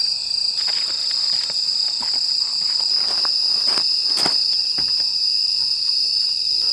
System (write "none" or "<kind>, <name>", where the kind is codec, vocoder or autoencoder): none